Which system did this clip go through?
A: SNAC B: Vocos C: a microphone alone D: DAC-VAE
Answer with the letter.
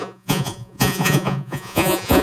B